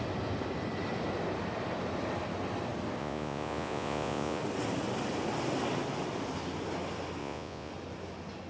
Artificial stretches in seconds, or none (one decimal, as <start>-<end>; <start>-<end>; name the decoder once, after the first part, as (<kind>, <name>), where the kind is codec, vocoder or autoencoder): 3.0-4.4 (vocoder, Vocos); 7.2-7.7